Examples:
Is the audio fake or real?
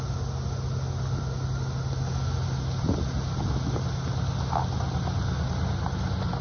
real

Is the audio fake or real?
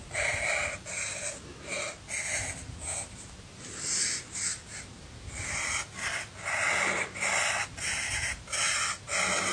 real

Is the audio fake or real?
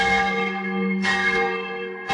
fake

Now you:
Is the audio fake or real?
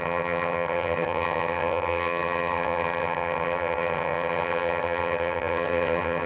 fake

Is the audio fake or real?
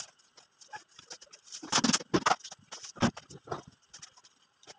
real